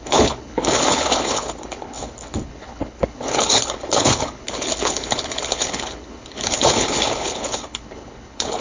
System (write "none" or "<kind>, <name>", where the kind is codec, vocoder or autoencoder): codec, HILCodec